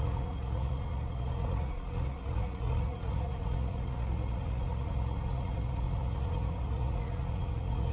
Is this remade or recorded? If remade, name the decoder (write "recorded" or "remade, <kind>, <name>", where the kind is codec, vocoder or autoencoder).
remade, vocoder, Vocos